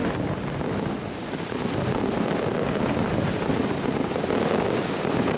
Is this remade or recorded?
recorded